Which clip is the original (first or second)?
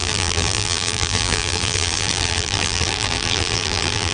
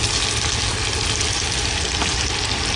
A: second